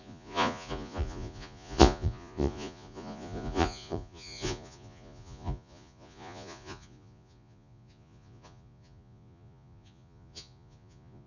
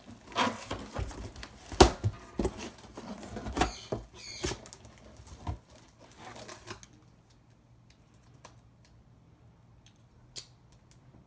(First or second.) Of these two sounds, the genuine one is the second